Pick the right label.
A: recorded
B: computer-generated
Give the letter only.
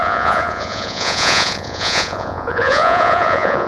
B